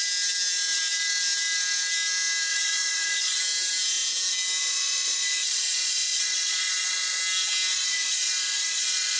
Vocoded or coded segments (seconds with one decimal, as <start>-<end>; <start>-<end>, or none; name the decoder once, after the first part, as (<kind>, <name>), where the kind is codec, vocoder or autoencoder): 2.5-3.4 (vocoder, Vocos); 4.6-7.2; 7.7-9.2